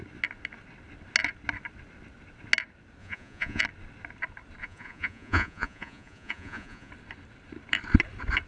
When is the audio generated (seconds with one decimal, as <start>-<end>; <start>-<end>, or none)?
3.0-3.6; 4.6-6.9